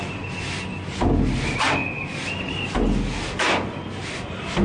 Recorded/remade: recorded